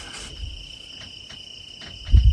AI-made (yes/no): no